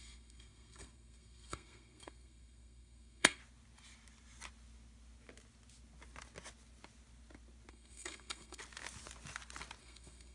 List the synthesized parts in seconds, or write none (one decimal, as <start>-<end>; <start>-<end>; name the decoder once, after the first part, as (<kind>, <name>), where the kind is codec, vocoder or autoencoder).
0.0-3.4 (codec, SNAC); 7.7-8.6; 9.8-10.3